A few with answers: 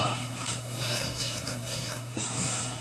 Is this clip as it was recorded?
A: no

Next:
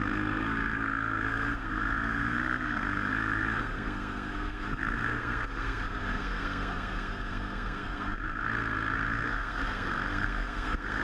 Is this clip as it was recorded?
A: no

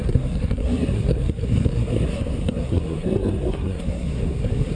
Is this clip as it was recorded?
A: no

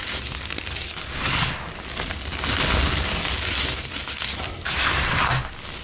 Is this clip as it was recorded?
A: yes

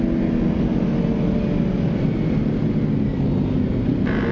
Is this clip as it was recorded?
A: yes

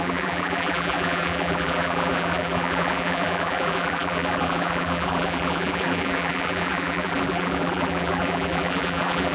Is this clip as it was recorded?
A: no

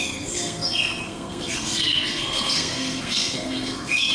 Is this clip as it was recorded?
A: no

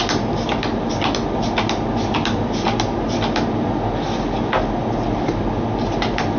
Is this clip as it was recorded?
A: yes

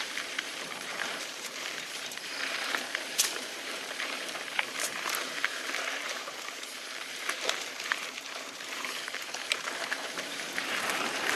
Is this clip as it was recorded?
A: no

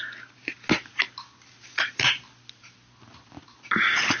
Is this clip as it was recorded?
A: yes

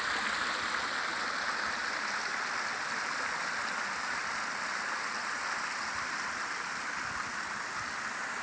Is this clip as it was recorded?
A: yes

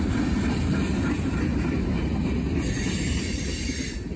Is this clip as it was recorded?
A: yes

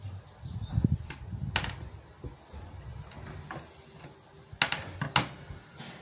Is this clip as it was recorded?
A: yes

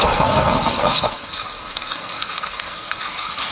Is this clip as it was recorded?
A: no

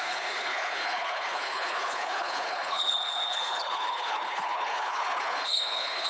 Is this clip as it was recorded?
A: no